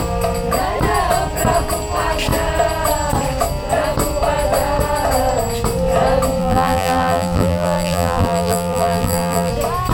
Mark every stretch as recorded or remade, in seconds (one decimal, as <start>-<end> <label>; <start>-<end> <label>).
0.0-6.4 recorded; 6.4-9.5 remade; 9.5-9.9 recorded